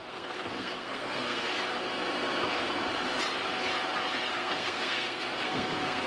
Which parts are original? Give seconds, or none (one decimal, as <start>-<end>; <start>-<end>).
1.5-4.3